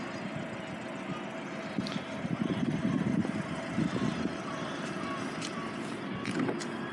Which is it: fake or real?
real